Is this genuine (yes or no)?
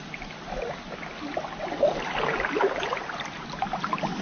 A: yes